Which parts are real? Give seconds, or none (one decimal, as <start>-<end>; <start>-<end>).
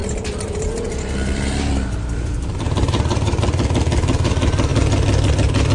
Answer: 3.4-5.7